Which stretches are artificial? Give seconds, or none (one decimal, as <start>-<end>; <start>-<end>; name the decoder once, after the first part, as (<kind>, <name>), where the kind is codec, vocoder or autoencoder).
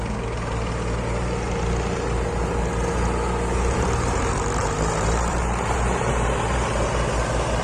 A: 4.6-6.9 (vocoder, BigVGAN v2)